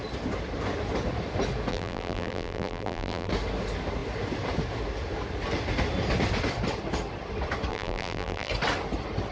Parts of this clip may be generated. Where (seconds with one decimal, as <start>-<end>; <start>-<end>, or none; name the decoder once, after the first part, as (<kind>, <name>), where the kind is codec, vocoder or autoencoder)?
1.7-3.3 (vocoder, BigVGAN v2); 7.7-8.5